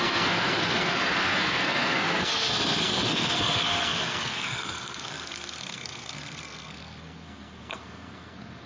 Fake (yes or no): yes